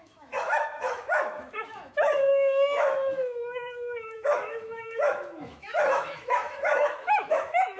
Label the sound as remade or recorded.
remade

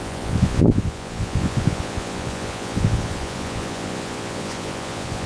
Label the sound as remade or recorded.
remade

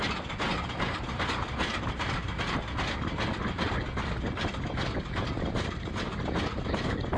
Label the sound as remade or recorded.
recorded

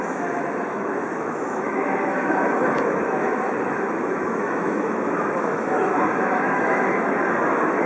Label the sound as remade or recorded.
remade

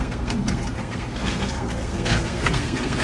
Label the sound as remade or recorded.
remade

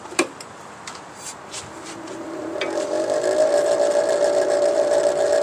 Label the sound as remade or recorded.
recorded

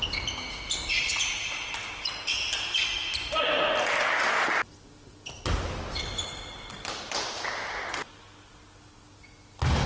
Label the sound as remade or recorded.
recorded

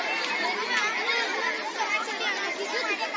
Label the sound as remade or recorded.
recorded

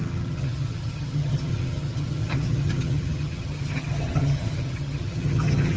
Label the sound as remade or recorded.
remade